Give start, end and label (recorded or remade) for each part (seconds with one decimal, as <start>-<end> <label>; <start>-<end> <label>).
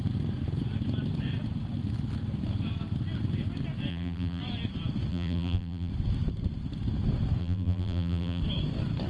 0.0-3.9 recorded; 3.9-4.4 remade; 4.4-5.1 recorded; 5.1-5.9 remade; 5.9-7.4 recorded; 7.4-8.4 remade; 8.4-9.1 recorded